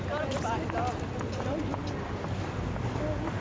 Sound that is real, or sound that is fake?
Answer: real